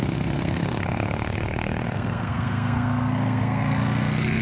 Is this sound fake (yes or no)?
yes